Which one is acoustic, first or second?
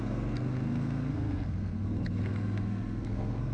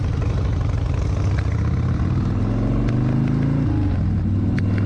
second